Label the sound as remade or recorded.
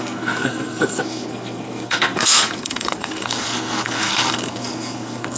remade